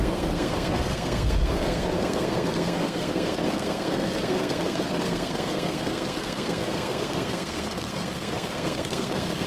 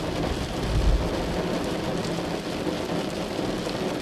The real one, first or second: second